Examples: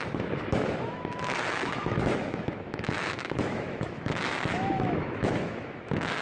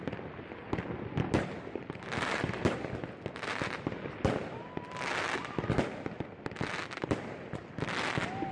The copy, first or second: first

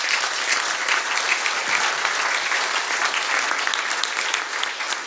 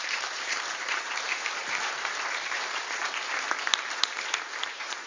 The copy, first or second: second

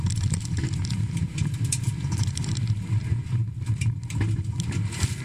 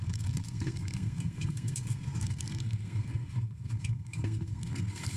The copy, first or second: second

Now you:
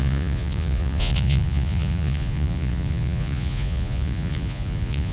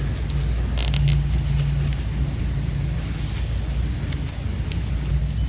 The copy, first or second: first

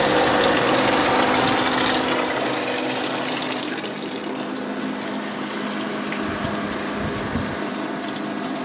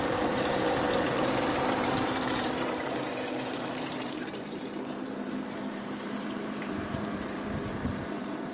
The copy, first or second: second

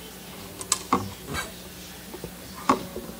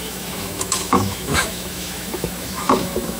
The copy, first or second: second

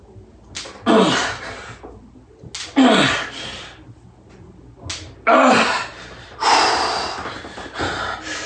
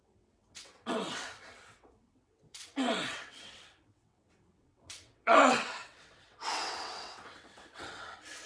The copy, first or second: second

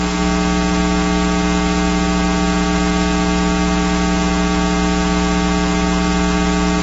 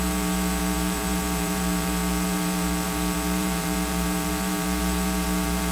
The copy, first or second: second